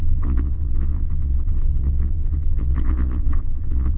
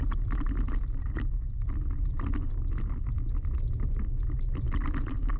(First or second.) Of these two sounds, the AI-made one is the first